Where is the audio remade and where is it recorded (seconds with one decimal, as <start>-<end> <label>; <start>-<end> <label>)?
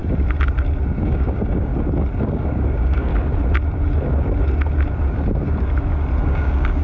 0.0-1.0 recorded; 1.0-1.7 remade; 1.7-2.3 recorded; 2.3-3.1 remade; 3.1-6.2 recorded; 6.2-6.8 remade